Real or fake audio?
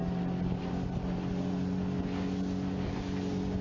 real